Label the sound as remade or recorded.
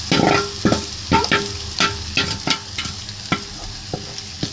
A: recorded